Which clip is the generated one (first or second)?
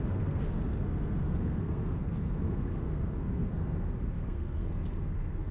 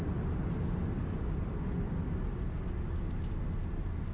first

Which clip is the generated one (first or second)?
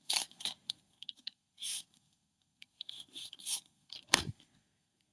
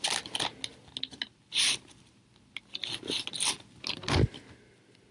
first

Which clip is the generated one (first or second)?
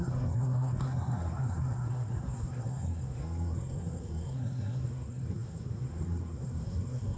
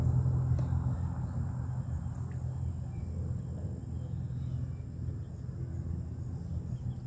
first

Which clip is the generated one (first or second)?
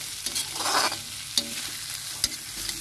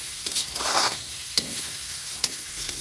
second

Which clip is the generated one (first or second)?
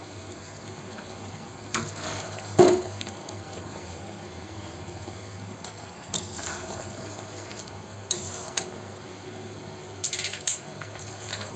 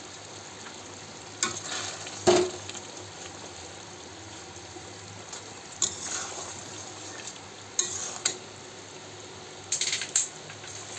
first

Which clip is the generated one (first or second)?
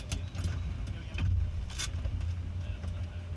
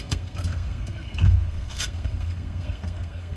second